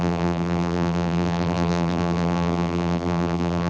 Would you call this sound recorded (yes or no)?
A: no